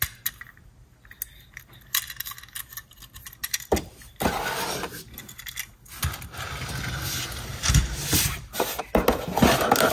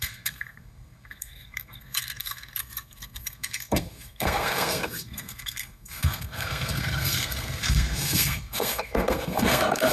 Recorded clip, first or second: first